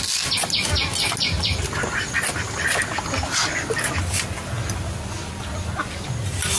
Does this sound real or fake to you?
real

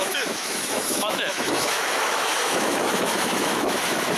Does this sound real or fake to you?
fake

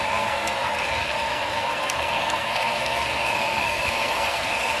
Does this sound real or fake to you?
fake